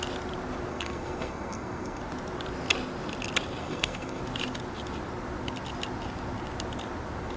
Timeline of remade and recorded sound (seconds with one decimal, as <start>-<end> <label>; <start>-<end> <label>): 0.0-0.7 recorded; 0.7-2.0 remade; 2.0-3.6 recorded; 3.6-4.2 remade; 4.2-7.4 recorded